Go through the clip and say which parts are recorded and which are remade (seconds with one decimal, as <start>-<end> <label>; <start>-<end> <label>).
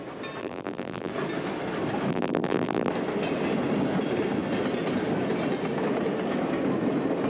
0.0-0.4 recorded; 0.4-1.1 remade; 1.1-2.1 recorded; 2.1-2.9 remade; 2.9-7.3 recorded